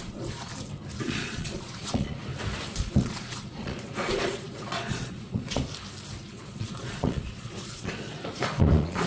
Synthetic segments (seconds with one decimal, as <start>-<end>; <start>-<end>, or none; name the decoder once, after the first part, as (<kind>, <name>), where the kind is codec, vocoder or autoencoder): 0.0-0.5 (vocoder, Vocos); 1.0-2.2; 2.7-5.6; 6.3-9.1